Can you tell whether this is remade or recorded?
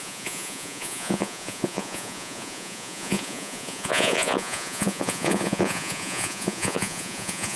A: remade